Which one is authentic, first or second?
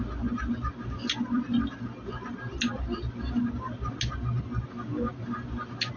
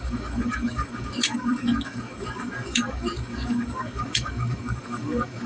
first